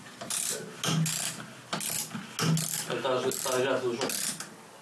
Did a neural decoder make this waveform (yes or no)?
no